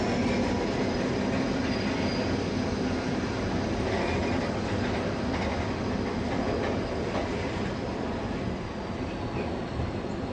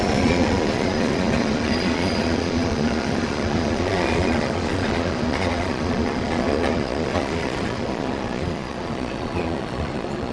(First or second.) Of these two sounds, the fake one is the second